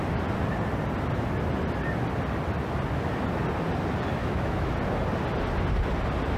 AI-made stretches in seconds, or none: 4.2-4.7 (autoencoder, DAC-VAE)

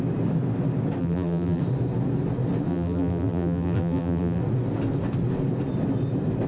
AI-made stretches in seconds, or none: 1.0-1.6 (vocoder, BigVGAN v2); 2.7-4.4